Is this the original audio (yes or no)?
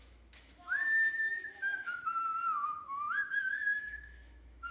no